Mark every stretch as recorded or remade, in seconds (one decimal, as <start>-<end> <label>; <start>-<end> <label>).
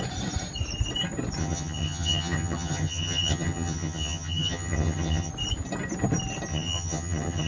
0.0-1.4 recorded; 1.4-5.3 remade; 5.3-6.5 recorded; 6.5-7.5 remade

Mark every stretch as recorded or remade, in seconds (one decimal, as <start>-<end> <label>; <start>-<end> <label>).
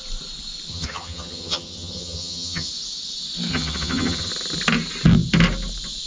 0.0-0.7 recorded; 0.7-2.7 remade; 2.7-3.5 recorded; 3.5-4.3 remade; 4.3-6.1 recorded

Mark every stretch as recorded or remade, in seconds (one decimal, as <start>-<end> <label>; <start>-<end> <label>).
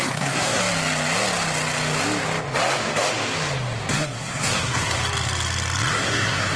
0.0-0.6 remade; 0.6-3.9 recorded; 3.9-5.0 remade; 5.0-5.9 recorded; 5.9-6.6 remade